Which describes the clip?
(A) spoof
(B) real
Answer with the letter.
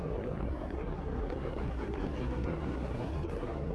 A